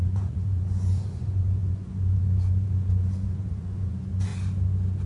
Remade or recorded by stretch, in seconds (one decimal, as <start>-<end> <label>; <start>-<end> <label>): 0.0-4.3 remade; 4.3-5.1 recorded